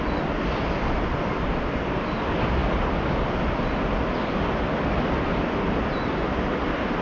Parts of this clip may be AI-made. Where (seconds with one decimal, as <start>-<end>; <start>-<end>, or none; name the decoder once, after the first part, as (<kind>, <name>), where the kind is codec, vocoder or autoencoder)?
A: none